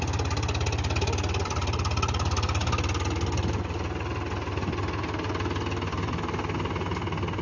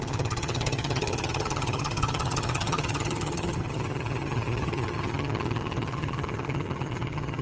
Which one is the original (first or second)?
first